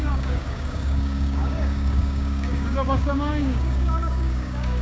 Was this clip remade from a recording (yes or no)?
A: yes